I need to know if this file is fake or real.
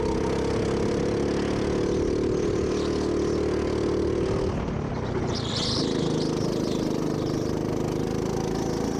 real